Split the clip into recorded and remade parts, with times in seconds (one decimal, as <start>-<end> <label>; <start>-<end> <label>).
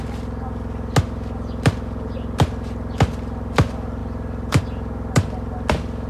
0.0-6.1 recorded